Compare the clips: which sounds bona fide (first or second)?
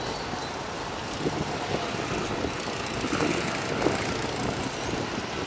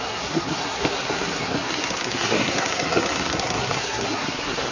first